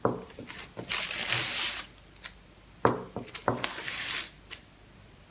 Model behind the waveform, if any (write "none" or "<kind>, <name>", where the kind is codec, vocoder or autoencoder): none